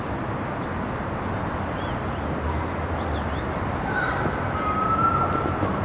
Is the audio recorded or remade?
recorded